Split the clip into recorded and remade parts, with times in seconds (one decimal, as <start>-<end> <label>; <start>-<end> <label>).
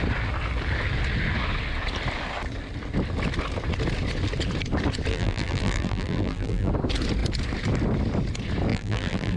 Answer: 0.0-5.1 recorded; 5.1-6.7 remade; 6.7-8.7 recorded; 8.7-9.4 remade